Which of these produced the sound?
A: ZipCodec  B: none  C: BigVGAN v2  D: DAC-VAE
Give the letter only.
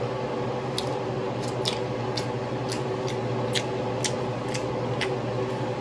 B